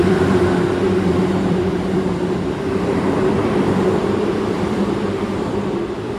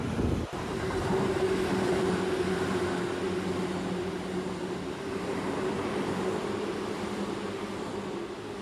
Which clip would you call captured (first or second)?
second